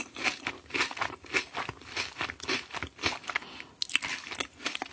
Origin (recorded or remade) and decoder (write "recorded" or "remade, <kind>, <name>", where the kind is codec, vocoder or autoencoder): recorded